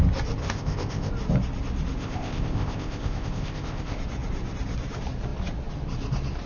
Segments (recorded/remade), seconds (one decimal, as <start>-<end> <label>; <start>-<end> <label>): 0.0-0.4 recorded; 0.4-1.1 remade; 1.1-2.0 recorded; 2.0-4.0 remade; 4.0-6.5 recorded